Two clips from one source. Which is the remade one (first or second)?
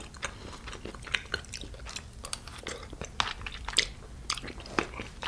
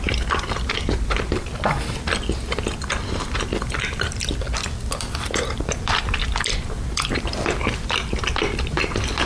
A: second